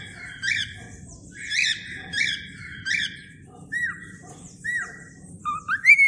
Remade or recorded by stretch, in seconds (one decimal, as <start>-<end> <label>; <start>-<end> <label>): 0.0-6.1 remade